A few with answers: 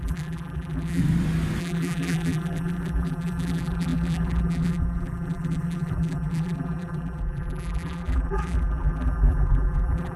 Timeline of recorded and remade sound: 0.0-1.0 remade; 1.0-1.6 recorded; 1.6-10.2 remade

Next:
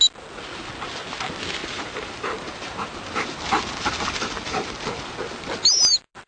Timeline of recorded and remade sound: 0.0-1.6 recorded; 1.6-5.4 remade; 5.4-6.3 recorded

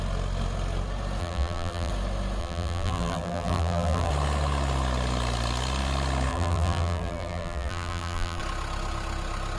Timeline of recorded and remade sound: 0.0-1.2 recorded; 1.2-1.9 remade; 1.9-2.4 recorded; 2.4-4.1 remade; 4.1-6.3 recorded; 6.3-8.4 remade; 8.4-9.6 recorded

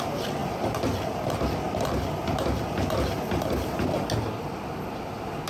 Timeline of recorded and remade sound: 0.0-5.5 recorded